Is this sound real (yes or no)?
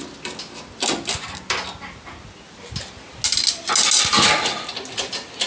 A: yes